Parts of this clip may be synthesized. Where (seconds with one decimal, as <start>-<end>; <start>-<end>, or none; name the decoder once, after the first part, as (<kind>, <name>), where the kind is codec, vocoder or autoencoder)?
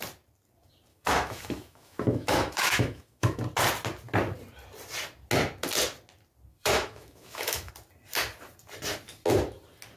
0.9-3.4 (autoencoder, DAC-VAE); 6.5-7.7